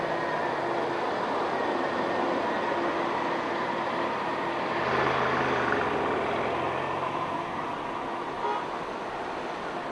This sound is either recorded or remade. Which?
recorded